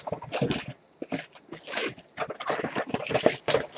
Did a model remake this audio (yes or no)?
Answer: no